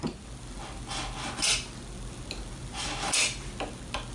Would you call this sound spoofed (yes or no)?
no